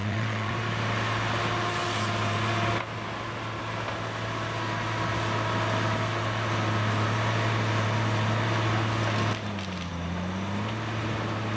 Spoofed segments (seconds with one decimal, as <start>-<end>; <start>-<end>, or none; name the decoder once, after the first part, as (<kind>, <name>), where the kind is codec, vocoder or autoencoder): 0.0-0.5 (vocoder, WaveNeXt)